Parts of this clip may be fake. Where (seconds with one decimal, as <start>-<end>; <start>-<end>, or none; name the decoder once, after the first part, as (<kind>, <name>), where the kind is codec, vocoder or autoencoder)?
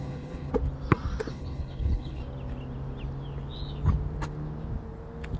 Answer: 0.0-0.5 (codec, HILCodec); 1.3-2.2